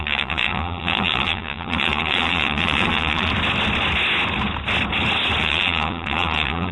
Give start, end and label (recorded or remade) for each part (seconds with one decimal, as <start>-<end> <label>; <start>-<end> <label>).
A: 0.0-3.3 remade; 3.3-5.4 recorded; 5.4-6.7 remade